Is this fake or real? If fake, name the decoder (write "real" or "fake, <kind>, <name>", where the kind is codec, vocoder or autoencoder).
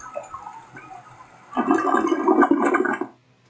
real